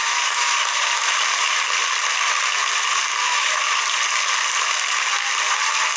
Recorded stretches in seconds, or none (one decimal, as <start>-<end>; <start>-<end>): 0.8-3.2; 3.8-6.0